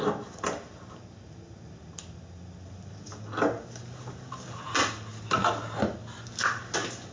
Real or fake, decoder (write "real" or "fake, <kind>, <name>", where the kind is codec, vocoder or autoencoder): real